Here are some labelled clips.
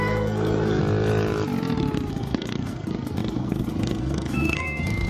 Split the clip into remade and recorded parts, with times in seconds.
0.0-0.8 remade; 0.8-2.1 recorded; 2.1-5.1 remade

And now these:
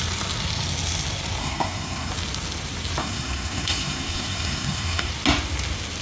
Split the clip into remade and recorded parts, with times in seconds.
0.0-1.4 recorded; 1.4-2.1 remade; 2.1-3.0 recorded; 3.0-5.1 remade; 5.1-6.0 recorded